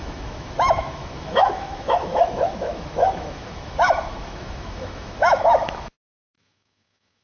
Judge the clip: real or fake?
fake